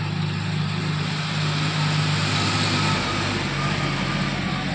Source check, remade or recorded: recorded